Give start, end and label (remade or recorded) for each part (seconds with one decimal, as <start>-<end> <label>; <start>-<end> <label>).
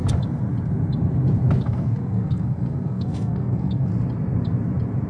0.0-1.6 recorded; 1.6-3.9 remade; 3.9-5.1 recorded